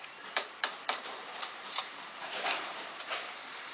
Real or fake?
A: fake